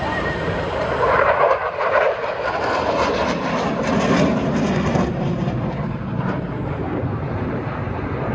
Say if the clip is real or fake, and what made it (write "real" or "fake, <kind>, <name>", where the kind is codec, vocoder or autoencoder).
fake, vocoder, BigVGAN v2